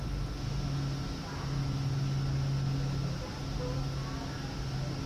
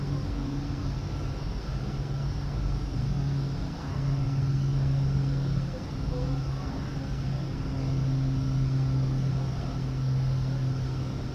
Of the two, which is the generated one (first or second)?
second